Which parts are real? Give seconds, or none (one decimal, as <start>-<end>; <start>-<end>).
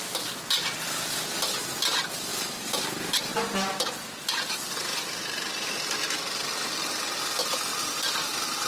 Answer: 0.0-4.9; 5.8-7.7